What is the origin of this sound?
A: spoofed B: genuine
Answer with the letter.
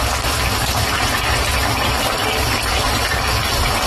B